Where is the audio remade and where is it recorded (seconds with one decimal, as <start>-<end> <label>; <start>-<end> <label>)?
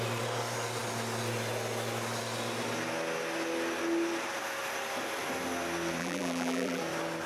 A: 0.0-6.0 recorded; 6.0-6.8 remade; 6.8-7.3 recorded